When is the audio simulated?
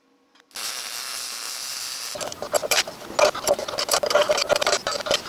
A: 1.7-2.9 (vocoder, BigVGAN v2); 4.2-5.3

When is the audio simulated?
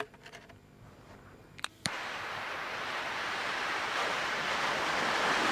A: 1.4-4.3 (vocoder, BigVGAN v2)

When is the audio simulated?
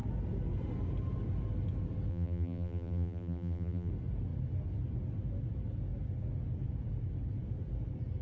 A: 2.1-3.9 (vocoder, BigVGAN v2)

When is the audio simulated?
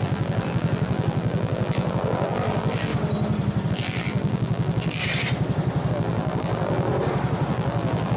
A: 0.0-2.9 (vocoder, BigVGAN v2); 3.7-5.0; 5.9-6.9; 7.5-8.2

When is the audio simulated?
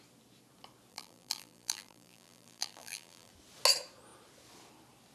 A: 0.9-3.3 (vocoder, BigVGAN v2)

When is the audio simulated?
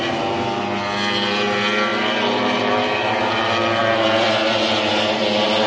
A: 1.9-2.7 (vocoder, BigVGAN v2)